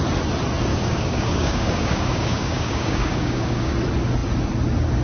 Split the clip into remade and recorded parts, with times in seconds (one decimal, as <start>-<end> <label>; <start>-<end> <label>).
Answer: 0.0-0.7 recorded; 0.7-3.7 remade; 3.7-5.0 recorded